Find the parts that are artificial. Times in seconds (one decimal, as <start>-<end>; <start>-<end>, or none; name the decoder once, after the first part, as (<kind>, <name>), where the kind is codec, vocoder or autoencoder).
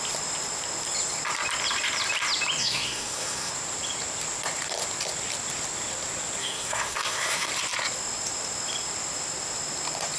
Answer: 2.6-3.5 (codec, SNAC); 6.4-7.5